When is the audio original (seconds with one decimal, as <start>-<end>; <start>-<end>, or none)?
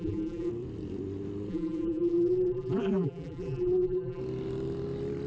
0.5-1.5; 4.2-5.3